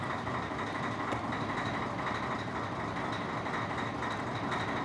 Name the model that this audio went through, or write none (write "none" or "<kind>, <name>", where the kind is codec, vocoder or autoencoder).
none